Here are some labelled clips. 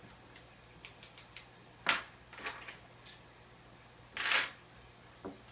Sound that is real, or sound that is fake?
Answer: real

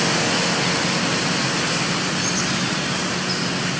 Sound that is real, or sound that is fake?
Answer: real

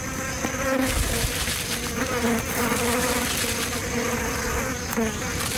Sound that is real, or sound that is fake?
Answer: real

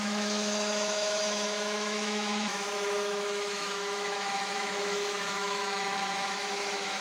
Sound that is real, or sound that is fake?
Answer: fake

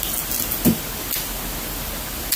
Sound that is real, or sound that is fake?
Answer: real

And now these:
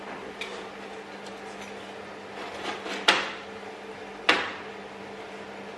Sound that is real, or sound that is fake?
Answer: real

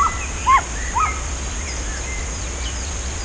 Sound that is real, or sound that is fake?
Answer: real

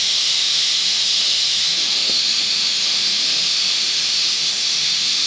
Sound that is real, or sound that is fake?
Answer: fake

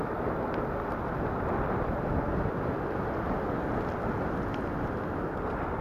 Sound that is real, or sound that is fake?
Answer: real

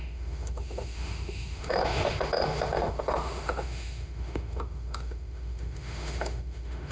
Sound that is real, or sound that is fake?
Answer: fake